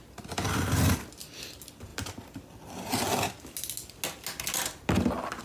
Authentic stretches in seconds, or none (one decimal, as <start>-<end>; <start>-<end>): 0.0-1.9; 2.9-5.4